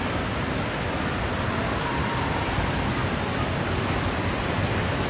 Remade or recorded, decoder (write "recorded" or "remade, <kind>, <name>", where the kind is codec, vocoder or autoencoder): recorded